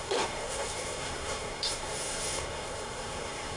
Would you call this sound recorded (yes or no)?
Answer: no